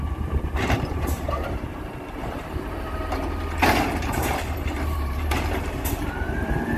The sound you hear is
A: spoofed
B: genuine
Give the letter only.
A